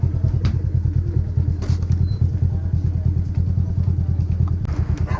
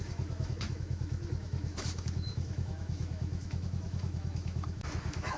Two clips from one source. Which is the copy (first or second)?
second